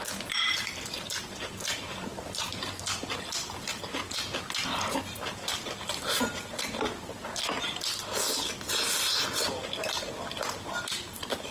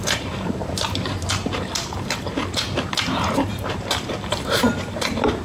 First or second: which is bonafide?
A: first